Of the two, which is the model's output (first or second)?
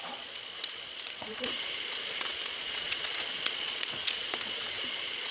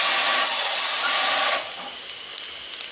first